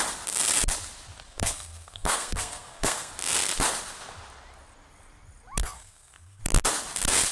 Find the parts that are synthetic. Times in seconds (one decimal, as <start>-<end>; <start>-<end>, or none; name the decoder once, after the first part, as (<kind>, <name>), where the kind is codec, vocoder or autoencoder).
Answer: 1.3-3.1 (codec, SNAC); 5.6-6.4